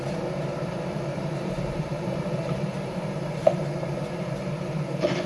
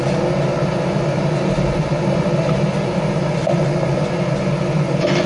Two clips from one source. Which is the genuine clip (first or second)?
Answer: second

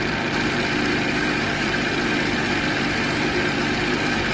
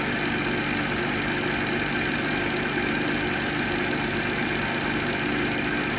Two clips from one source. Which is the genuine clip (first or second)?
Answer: second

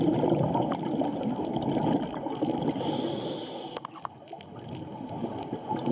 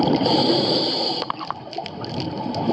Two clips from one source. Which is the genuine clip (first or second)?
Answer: first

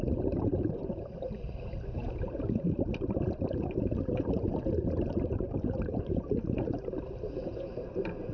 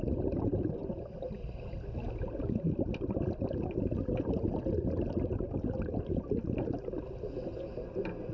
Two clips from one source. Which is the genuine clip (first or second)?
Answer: second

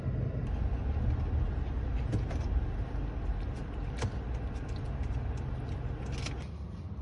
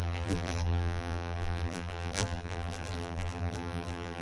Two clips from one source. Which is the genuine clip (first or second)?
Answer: first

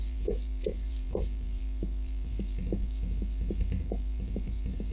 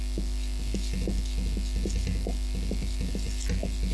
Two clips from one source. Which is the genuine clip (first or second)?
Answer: second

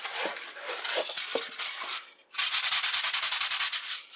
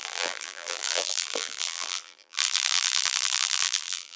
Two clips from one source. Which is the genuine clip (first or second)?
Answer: first